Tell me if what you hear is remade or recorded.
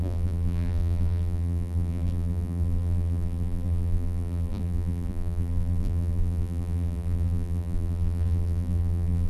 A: remade